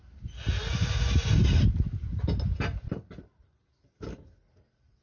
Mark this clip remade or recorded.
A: recorded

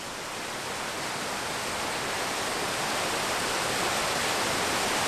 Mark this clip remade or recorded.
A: recorded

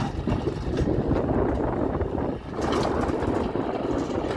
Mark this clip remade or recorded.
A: recorded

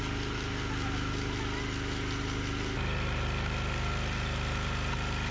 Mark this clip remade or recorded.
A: recorded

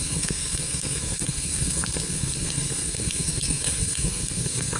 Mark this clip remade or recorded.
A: remade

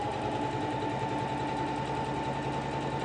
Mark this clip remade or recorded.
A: recorded